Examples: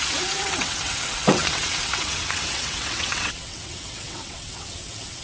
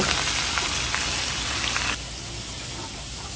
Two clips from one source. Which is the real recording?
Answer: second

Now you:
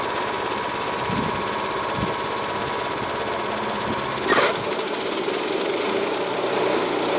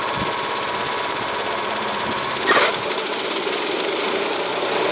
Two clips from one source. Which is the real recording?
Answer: first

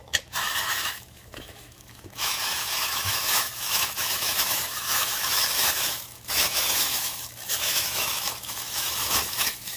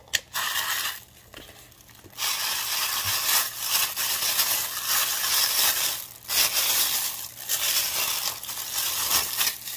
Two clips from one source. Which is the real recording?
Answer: second